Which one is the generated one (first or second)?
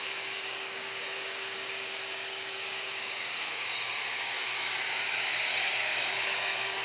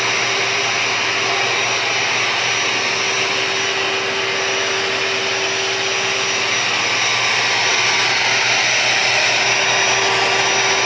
first